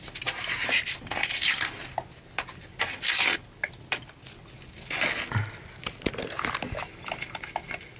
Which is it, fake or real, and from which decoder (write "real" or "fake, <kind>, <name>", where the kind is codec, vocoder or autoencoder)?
real